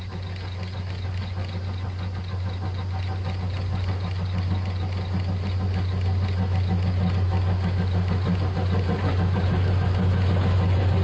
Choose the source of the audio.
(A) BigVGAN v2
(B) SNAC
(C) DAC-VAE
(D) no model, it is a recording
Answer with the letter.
D